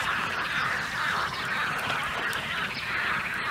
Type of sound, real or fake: real